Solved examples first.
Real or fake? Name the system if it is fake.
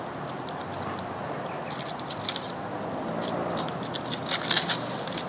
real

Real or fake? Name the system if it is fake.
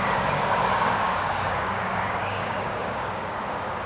fake, codec, DAC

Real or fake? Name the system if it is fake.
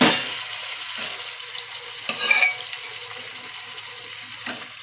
real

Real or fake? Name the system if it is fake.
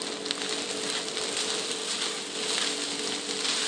real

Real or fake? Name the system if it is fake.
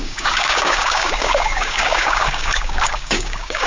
fake, codec, DAC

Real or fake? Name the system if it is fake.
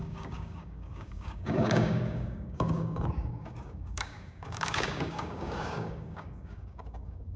fake, codec, DAC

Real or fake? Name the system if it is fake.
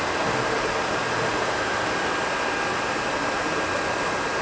real